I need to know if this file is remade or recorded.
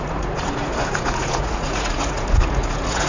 remade